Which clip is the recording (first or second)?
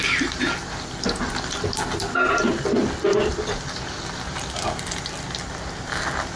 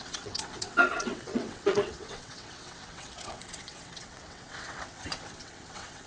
first